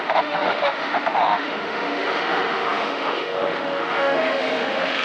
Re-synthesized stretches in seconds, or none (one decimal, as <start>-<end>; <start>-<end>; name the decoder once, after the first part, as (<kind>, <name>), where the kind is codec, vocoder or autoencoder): 0.0-5.0 (autoencoder, DAC-VAE)